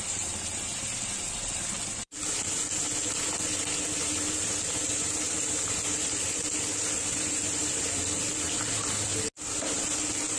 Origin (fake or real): real